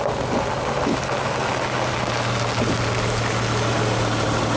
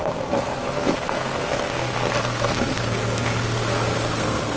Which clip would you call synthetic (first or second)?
second